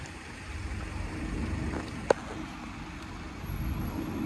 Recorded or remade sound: recorded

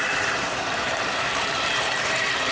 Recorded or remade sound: remade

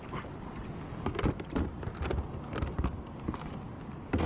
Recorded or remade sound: recorded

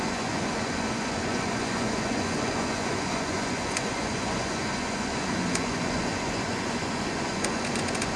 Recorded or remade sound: remade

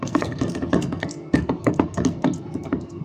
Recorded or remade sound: remade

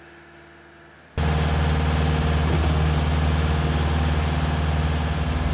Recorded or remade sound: recorded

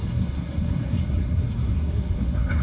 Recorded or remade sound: remade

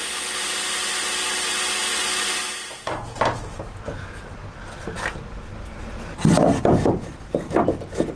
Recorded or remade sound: recorded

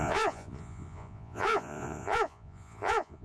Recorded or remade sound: remade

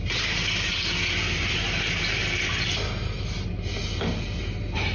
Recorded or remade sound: recorded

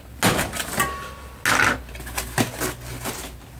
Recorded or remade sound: recorded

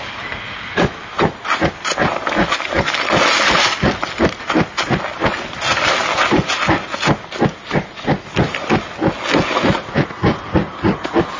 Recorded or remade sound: recorded